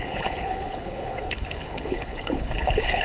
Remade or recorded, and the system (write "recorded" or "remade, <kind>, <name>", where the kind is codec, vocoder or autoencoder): remade, codec, HILCodec